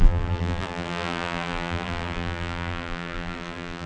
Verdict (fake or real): fake